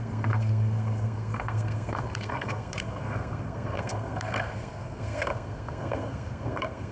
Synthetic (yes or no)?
yes